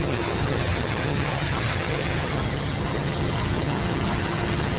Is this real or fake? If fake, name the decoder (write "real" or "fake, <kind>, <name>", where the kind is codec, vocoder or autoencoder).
fake, vocoder, HiFi-GAN